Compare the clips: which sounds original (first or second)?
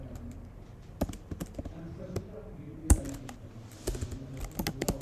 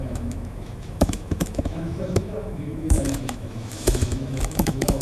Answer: first